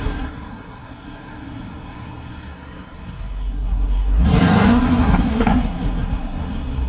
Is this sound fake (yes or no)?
yes